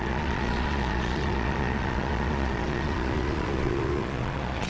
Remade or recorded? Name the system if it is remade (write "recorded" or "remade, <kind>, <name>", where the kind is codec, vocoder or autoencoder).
remade, vocoder, Vocos